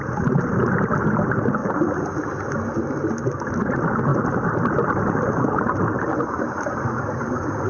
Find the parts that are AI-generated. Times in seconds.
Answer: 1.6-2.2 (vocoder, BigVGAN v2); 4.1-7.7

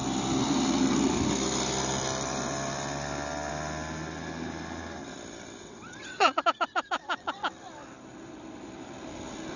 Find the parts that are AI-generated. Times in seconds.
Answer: 5.6-7.5 (vocoder, WaveNeXt)

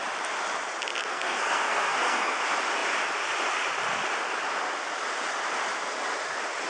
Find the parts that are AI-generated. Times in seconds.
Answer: 1.0-2.4 (codec, SNAC)

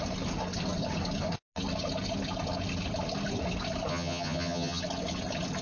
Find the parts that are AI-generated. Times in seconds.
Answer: 3.9-4.8 (vocoder, HiFi-GAN)

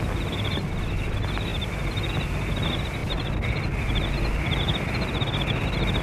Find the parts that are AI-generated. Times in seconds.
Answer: none

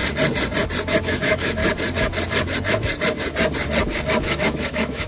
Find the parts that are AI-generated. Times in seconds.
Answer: 1.0-1.6 (autoencoder, DAC-VAE); 4.2-5.1